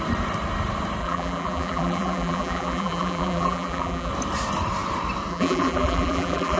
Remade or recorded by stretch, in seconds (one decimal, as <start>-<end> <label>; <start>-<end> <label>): 0.0-1.0 recorded; 1.0-4.1 remade; 4.1-5.3 recorded; 5.3-6.6 remade